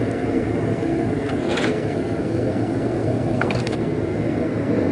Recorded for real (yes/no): no